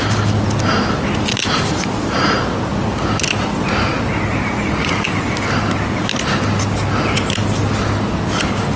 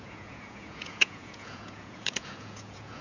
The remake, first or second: second